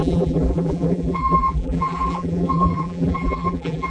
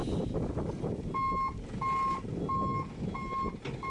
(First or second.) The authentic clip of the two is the second